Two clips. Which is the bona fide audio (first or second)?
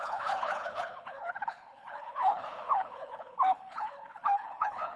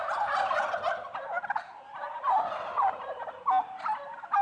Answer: second